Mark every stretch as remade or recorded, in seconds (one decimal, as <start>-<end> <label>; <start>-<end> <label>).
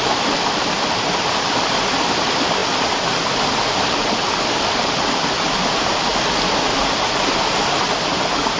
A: 0.0-8.6 recorded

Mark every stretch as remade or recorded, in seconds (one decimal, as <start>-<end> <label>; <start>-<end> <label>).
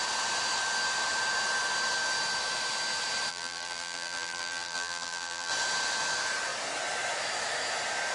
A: 0.0-3.3 recorded; 3.3-5.5 remade; 5.5-8.1 recorded